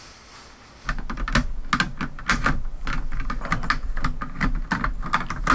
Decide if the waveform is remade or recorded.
recorded